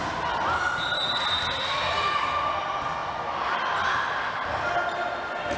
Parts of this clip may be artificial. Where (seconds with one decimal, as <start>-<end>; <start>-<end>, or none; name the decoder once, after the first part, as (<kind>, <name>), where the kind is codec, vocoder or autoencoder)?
none